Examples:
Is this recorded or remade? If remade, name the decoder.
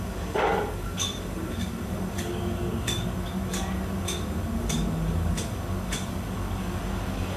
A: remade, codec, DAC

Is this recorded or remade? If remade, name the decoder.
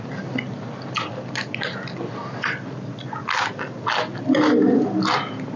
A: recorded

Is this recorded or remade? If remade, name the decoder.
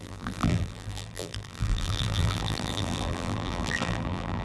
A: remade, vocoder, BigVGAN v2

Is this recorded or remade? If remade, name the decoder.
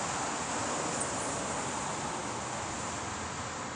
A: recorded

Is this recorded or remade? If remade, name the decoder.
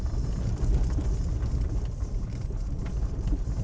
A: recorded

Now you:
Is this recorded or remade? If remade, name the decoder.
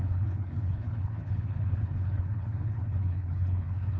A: remade, codec, HILCodec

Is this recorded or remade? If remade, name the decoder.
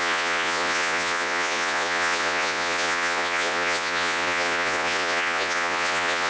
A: remade, vocoder, Vocos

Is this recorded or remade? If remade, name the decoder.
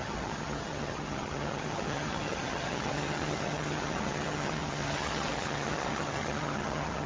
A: remade, vocoder, HiFi-GAN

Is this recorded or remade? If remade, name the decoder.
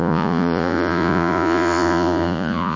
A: remade, vocoder, Vocos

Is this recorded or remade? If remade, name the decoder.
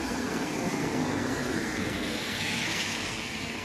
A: remade, codec, SNAC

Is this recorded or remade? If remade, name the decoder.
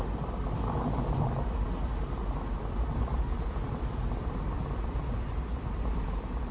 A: recorded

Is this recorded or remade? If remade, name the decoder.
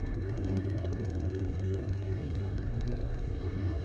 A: remade, codec, SNAC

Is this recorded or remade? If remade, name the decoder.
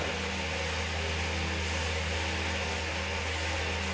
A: recorded